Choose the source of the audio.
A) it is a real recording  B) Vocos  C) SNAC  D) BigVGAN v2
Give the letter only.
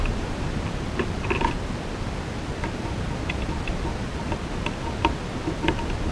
A